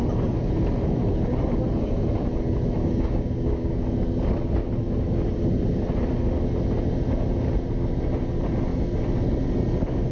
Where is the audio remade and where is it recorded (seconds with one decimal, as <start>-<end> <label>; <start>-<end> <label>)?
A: 0.0-2.8 recorded; 2.8-3.8 remade; 3.8-10.1 recorded

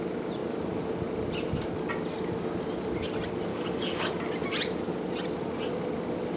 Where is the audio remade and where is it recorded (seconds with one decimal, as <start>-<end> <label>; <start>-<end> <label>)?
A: 0.0-3.5 recorded; 3.5-4.1 remade; 4.1-6.4 recorded

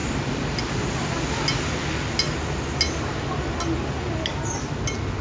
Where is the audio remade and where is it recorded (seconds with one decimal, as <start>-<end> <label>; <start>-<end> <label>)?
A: 0.0-5.2 recorded

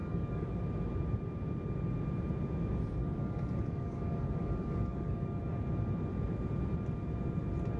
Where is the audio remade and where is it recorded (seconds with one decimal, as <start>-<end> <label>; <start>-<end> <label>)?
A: 0.0-0.6 remade; 0.6-3.0 recorded; 3.0-5.4 remade; 5.4-7.8 recorded

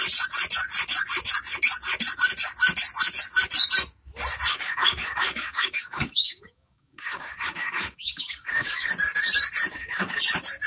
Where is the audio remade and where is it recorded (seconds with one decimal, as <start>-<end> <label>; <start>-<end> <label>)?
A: 0.0-4.5 recorded; 4.5-8.9 remade; 8.9-9.7 recorded; 9.7-10.2 remade; 10.2-10.7 recorded

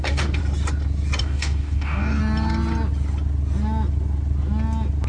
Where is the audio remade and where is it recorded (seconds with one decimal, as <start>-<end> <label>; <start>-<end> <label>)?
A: 0.0-0.4 remade; 0.4-1.2 recorded; 1.2-2.2 remade; 2.2-5.1 recorded

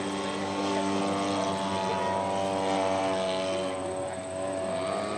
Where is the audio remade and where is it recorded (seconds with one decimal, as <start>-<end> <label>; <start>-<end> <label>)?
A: 0.0-0.4 recorded; 0.4-1.0 remade; 1.0-5.2 recorded

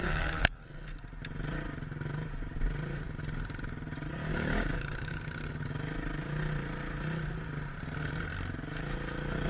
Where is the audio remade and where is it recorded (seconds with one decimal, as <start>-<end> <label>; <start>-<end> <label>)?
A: 0.0-0.6 remade; 0.6-4.3 recorded; 4.3-5.2 remade; 5.2-9.5 recorded